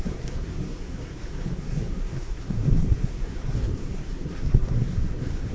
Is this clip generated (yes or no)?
yes